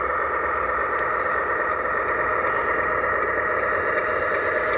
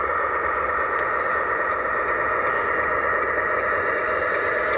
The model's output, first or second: second